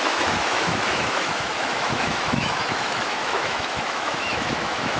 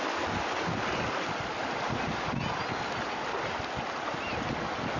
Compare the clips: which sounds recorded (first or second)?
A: second